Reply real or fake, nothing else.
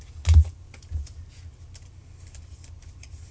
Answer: real